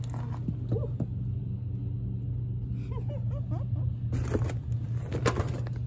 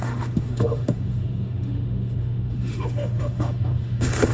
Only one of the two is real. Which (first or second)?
first